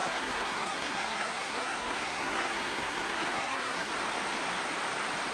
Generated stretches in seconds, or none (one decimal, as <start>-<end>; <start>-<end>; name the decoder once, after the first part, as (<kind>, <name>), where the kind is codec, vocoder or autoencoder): 0.0-3.9 (codec, SNAC)